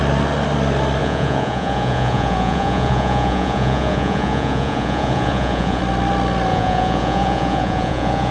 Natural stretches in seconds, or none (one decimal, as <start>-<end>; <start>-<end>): 0.0-1.0; 5.8-6.5